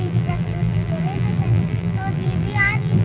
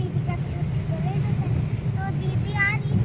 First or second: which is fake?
first